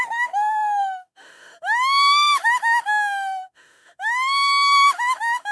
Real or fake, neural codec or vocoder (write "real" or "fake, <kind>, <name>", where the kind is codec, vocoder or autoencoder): fake, autoencoder, DAC-VAE